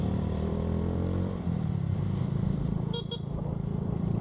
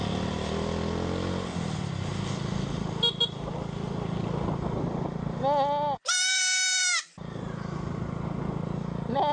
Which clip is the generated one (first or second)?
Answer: first